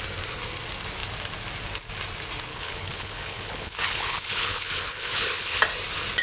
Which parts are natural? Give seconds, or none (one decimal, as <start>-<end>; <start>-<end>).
0.0-2.5; 5.6-6.2